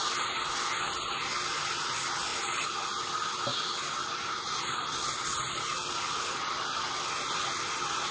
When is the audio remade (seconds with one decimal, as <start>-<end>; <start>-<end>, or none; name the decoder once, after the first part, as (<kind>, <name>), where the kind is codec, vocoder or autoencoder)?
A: none